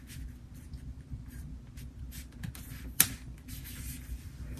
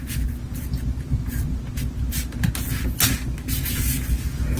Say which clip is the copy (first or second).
first